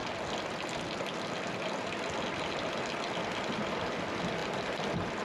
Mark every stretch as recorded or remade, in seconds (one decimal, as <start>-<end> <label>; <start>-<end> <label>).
0.0-5.2 recorded